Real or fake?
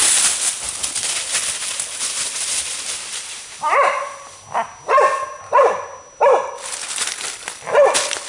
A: real